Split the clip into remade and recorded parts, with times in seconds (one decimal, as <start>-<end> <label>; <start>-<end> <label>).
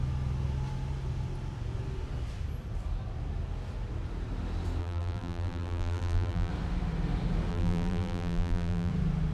0.0-4.8 recorded; 4.8-6.5 remade; 6.5-7.5 recorded; 7.5-8.9 remade; 8.9-9.3 recorded